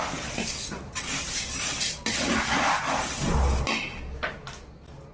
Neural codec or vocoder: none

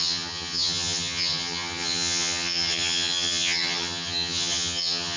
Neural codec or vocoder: vocoder, HiFi-GAN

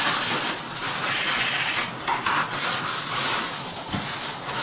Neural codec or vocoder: none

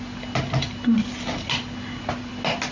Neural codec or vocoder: none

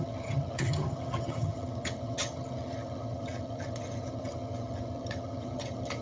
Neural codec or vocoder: vocoder, HiFi-GAN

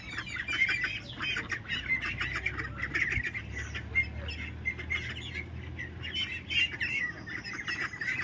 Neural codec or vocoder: none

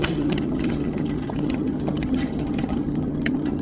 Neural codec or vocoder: vocoder, HiFi-GAN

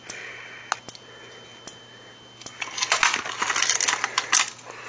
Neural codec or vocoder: none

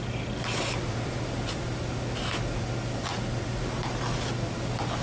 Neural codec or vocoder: none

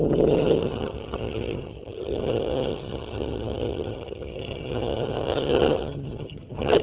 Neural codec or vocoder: vocoder, HiFi-GAN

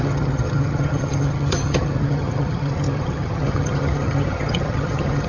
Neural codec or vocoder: vocoder, HiFi-GAN